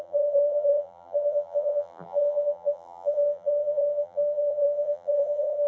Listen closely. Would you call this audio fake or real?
fake